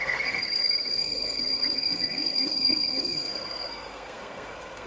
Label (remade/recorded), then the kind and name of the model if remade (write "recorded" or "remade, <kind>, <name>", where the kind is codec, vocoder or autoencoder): remade, codec, SNAC